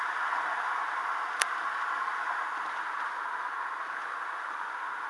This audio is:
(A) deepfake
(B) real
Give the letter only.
B